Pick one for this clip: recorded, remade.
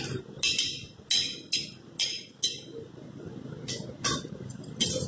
recorded